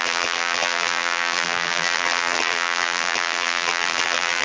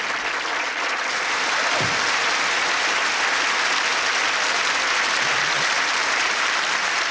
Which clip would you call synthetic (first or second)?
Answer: first